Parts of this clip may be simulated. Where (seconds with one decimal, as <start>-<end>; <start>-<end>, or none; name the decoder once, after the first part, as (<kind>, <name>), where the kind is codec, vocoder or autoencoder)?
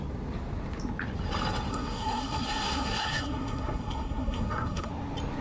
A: 1.7-4.9 (codec, SNAC)